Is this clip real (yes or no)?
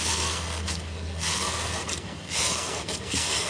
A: no